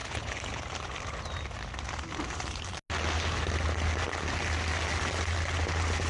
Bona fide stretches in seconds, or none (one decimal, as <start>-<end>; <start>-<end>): 0.6-6.1